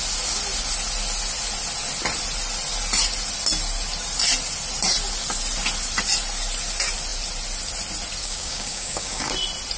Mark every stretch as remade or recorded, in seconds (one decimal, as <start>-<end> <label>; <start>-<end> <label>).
0.0-8.2 recorded; 8.2-9.3 remade; 9.3-9.8 recorded